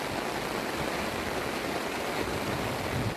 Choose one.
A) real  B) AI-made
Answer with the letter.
A